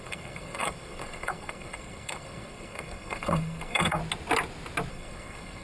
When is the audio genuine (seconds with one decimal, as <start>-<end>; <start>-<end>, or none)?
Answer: 4.0-4.9